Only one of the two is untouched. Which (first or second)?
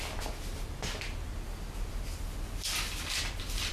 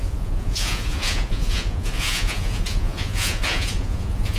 first